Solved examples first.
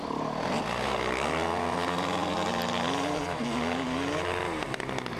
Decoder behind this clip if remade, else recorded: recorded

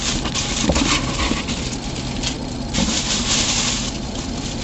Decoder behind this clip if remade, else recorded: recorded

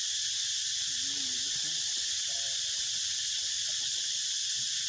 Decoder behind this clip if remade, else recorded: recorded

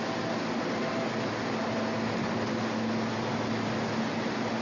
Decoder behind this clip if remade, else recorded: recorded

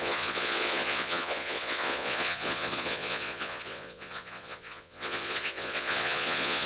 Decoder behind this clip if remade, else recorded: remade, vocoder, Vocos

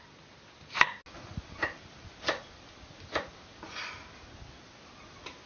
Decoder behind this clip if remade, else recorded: recorded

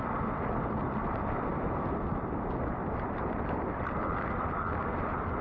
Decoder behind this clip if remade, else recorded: recorded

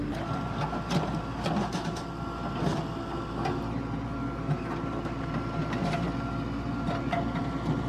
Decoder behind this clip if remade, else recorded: recorded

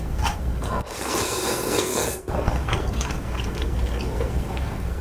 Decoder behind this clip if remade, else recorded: remade, codec, SNAC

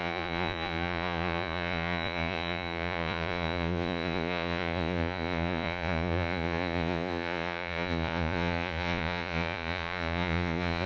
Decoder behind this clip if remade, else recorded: remade, vocoder, Vocos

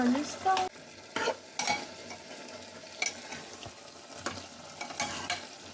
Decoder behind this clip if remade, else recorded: recorded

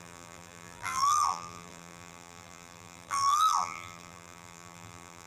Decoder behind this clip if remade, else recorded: remade, vocoder, BigVGAN v2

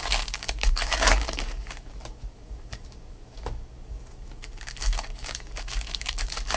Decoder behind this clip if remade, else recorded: remade, codec, DAC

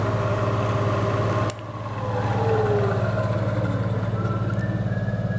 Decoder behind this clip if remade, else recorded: recorded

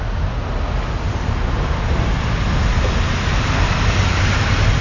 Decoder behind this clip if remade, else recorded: recorded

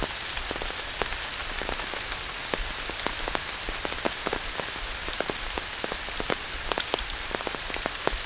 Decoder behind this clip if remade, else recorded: recorded